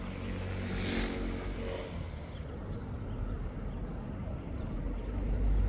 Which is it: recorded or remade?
recorded